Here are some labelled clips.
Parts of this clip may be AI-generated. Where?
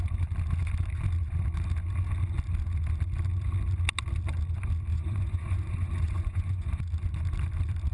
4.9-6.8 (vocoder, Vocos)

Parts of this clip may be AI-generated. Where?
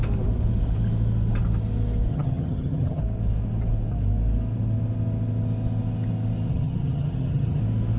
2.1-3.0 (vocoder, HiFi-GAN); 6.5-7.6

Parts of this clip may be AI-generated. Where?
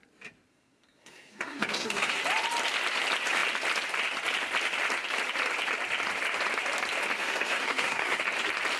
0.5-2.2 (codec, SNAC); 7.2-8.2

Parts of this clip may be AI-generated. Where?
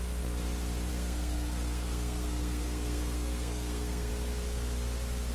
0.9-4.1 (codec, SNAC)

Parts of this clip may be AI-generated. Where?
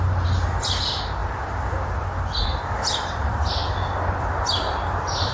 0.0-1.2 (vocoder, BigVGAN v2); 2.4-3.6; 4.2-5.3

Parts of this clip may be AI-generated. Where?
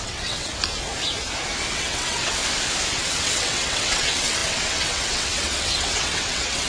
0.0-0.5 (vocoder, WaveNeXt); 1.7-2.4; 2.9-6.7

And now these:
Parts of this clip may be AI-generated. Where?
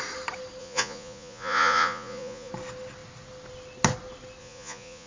0.6-2.5 (vocoder, Vocos); 4.4-5.1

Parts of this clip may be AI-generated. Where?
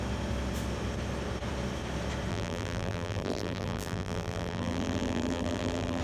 2.3-6.0 (vocoder, BigVGAN v2)